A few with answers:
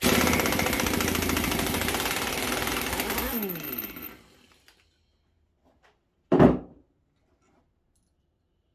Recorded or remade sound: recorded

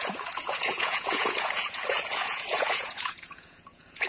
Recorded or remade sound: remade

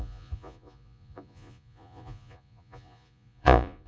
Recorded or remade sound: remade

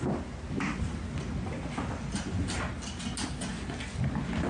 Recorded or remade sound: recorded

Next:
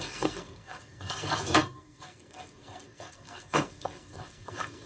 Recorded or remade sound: remade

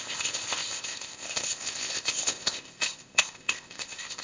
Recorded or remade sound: remade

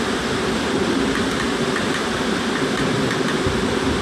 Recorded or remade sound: recorded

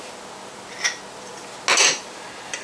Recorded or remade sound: recorded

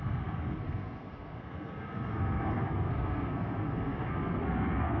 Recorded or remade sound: remade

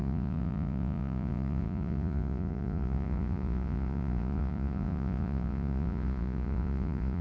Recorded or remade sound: remade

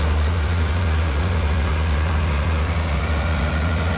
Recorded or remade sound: remade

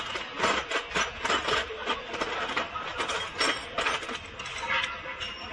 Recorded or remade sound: recorded